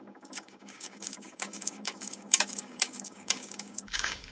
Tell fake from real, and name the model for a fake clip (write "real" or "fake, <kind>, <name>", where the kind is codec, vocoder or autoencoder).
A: fake, codec, DAC